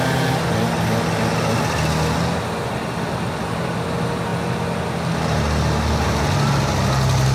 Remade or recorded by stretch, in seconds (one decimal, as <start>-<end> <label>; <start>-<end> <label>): 0.0-7.3 recorded